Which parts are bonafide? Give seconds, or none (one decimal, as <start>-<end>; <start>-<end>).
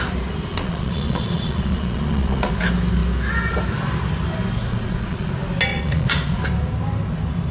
0.0-0.5; 2.5-4.7; 5.3-5.7; 6.4-7.5